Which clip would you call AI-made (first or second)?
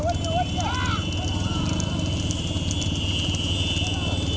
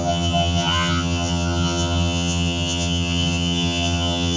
second